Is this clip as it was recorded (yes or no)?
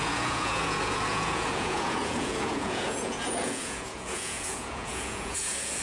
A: no